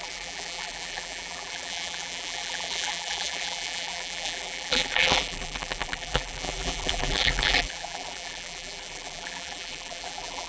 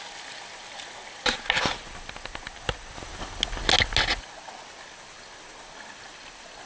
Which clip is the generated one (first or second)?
first